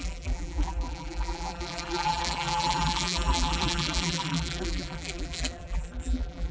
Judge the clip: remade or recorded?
remade